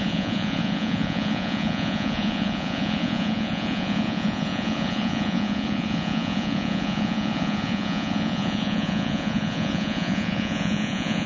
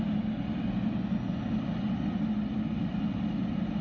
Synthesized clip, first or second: first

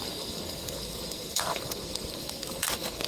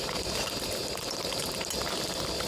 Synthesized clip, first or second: first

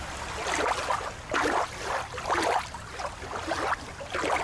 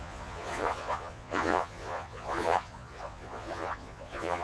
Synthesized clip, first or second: second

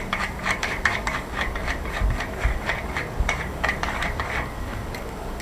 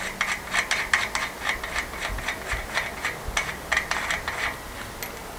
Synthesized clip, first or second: first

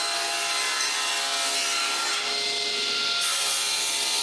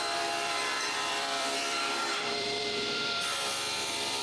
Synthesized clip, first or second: second